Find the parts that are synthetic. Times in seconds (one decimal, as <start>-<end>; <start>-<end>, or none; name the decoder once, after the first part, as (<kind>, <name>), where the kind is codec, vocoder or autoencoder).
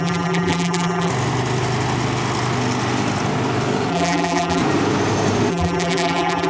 0.0-1.1 (vocoder, BigVGAN v2); 3.9-4.6; 5.5-6.5